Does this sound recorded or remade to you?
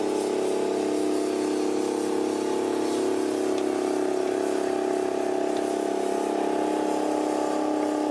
recorded